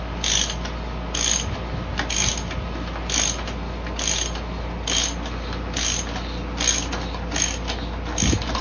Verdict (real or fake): real